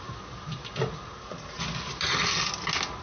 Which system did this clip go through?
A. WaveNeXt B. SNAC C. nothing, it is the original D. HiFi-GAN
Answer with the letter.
C